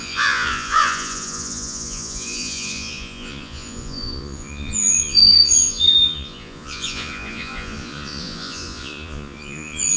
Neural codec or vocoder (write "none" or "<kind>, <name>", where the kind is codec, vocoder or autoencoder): vocoder, Vocos